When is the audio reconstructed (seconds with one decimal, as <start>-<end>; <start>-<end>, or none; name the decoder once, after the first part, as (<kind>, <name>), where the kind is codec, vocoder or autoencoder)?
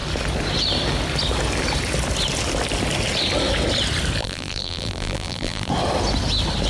4.2-5.7 (vocoder, BigVGAN v2)